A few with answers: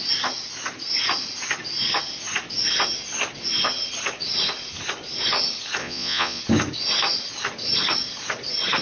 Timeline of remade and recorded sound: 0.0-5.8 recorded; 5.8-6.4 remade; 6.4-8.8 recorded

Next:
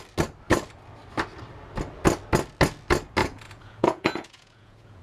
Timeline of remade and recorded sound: 0.0-3.2 recorded; 3.2-5.0 remade

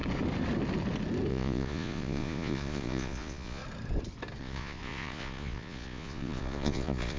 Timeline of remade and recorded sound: 0.0-1.3 recorded; 1.3-3.6 remade; 3.6-4.4 recorded; 4.4-7.2 remade

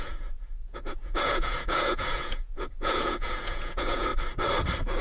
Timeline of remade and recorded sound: 0.0-4.1 remade; 4.1-5.0 recorded

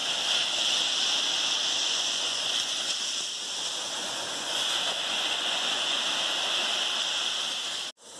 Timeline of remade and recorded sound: 0.0-1.8 recorded; 1.8-2.9 remade; 2.9-4.0 recorded; 4.0-6.0 remade; 6.0-8.2 recorded

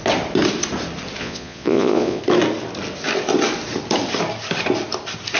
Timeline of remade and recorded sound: 0.0-1.2 recorded; 1.2-2.2 remade; 2.2-5.4 recorded

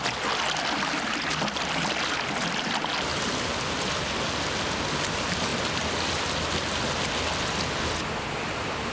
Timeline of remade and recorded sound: 0.0-8.9 recorded

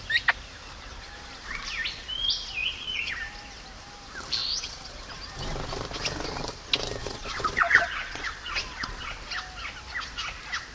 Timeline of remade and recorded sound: 0.0-2.6 recorded; 2.6-3.1 remade; 3.1-4.4 recorded; 4.4-5.0 remade; 5.0-7.0 recorded; 7.0-9.1 remade; 9.1-10.7 recorded